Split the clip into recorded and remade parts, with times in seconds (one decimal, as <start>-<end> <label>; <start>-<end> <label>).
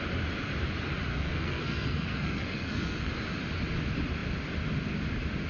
0.0-1.1 recorded; 1.1-3.1 remade; 3.1-5.5 recorded